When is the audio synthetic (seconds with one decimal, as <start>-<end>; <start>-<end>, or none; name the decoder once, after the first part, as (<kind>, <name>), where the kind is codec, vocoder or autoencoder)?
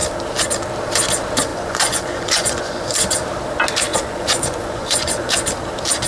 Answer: 1.5-2.8 (vocoder, Vocos); 3.9-5.3